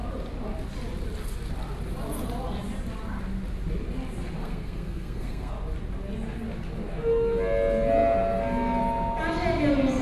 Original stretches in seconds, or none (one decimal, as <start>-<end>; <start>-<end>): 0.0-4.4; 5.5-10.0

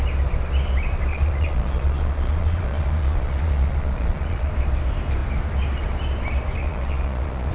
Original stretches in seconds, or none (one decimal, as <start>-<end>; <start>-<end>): 0.0-1.1; 4.5-6.6

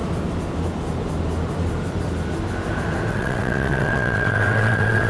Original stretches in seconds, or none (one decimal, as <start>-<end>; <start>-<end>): 0.0-3.1

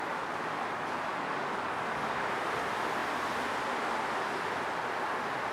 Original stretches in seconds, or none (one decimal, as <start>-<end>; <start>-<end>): 0.0-1.1; 2.3-5.5

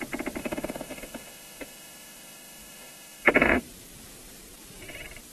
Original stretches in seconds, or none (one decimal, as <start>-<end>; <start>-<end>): 0.0-0.4; 3.6-5.3

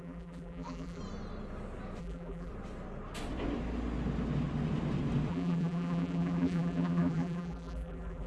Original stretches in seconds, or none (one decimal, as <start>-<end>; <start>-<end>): 1.0-2.0; 2.5-5.3

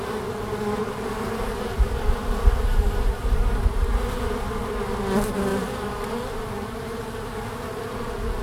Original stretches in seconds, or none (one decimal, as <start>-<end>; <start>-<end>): 0.0-0.8; 4.7-5.5